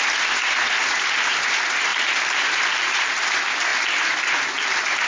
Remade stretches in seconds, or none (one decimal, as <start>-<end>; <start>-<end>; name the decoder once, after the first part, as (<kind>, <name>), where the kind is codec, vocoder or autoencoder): 1.9-3.1 (vocoder, BigVGAN v2)